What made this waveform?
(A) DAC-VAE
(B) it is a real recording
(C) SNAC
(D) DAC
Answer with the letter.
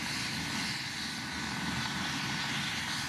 B